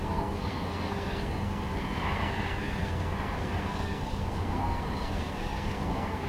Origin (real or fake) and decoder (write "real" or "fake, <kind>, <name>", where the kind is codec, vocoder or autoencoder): fake, codec, SNAC